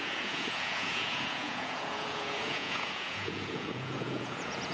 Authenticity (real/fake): fake